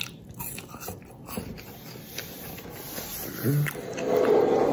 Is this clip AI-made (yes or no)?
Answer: no